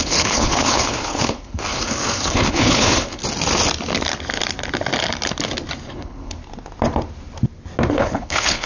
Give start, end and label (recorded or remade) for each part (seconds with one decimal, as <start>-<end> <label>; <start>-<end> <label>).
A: 0.0-3.2 remade; 3.2-5.9 recorded; 5.9-6.4 remade; 6.4-7.9 recorded; 7.9-8.7 remade